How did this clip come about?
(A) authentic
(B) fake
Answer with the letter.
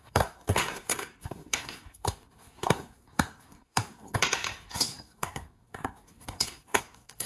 B